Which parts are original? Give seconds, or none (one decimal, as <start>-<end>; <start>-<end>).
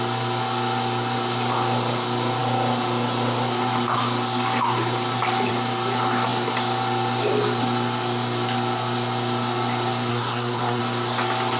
0.0-10.1; 10.8-11.6